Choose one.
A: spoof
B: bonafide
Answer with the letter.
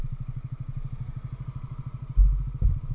B